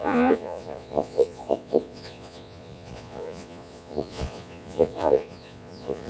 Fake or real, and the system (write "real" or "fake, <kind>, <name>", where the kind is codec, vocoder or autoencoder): fake, vocoder, Vocos